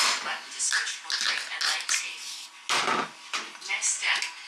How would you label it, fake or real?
real